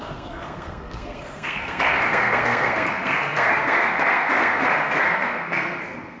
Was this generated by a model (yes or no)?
yes